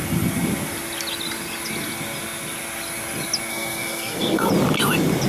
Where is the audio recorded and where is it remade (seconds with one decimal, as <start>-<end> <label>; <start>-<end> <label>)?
0.0-3.5 recorded; 3.5-4.5 remade; 4.5-5.3 recorded